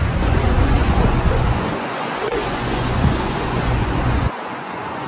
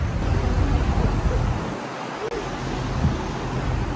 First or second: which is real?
second